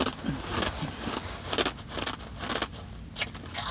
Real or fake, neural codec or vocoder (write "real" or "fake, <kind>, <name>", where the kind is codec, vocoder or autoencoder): real